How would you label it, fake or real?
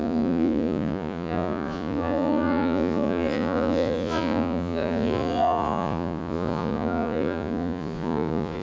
fake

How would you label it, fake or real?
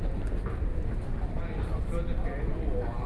real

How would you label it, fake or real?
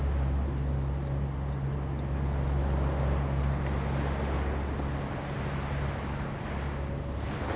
real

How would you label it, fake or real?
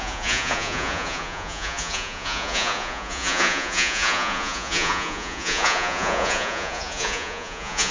fake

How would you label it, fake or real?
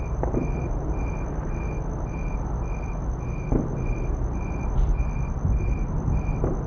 real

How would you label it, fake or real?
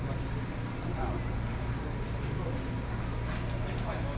real